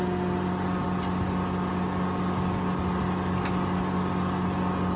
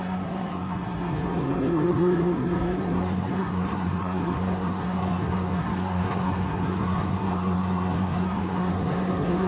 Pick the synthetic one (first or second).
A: second